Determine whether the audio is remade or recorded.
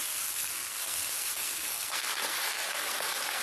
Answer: remade